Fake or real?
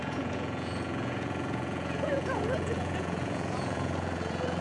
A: fake